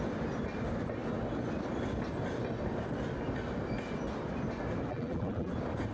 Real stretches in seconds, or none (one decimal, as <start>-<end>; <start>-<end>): 0.0-4.9; 5.5-5.9